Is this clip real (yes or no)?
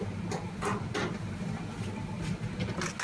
yes